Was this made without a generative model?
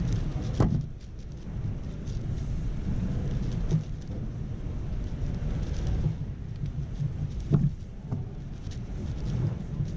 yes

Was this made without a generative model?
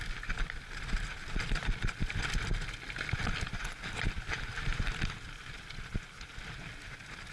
yes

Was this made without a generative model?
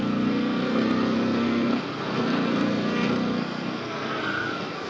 no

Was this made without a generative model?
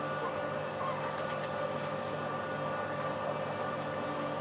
yes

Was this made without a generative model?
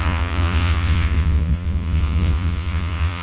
no